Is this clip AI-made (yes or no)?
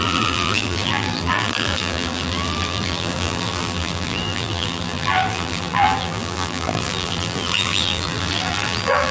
yes